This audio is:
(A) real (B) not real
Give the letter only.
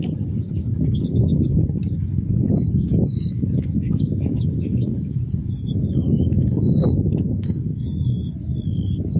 B